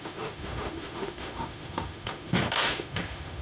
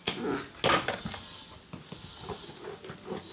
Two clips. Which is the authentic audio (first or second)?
second